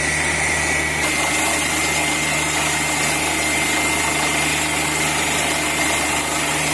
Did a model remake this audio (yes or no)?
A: no